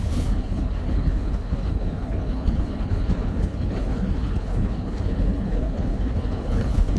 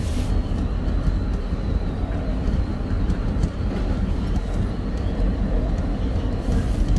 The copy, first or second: first